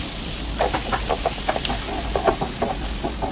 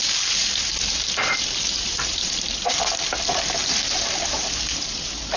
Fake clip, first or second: second